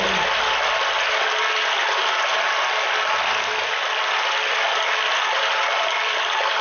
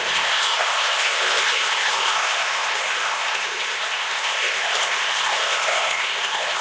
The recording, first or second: first